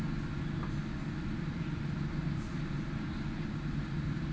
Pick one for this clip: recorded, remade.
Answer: recorded